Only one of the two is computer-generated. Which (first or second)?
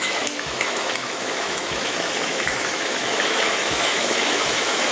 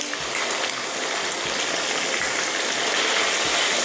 first